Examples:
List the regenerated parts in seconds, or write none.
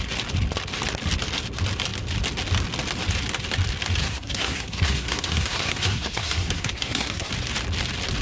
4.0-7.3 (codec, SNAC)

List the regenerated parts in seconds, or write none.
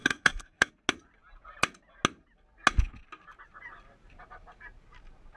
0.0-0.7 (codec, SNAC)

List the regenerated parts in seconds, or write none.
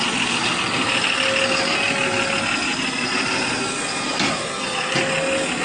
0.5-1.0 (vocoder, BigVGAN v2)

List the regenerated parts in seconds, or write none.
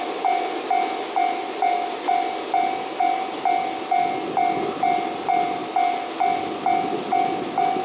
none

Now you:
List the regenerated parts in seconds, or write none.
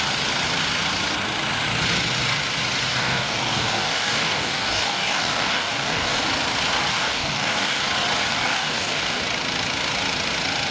2.9-6.2 (codec, DAC); 6.9-7.8; 8.3-9.2